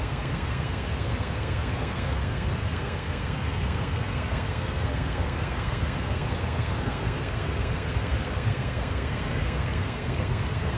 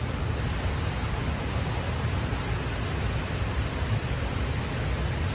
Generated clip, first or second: first